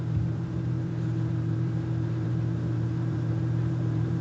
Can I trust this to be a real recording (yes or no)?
no